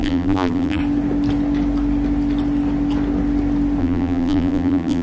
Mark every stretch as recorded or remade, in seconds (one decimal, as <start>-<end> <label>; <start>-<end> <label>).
0.0-0.8 remade; 0.8-3.8 recorded; 3.8-5.0 remade